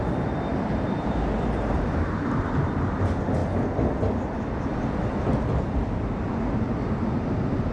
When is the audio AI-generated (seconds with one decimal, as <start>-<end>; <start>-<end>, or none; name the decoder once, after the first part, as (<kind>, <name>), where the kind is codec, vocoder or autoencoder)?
0.5-2.4 (vocoder, BigVGAN v2)